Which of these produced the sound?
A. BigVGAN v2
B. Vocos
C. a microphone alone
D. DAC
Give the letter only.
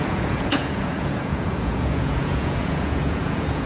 B